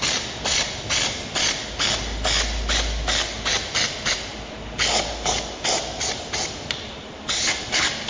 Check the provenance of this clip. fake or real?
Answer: real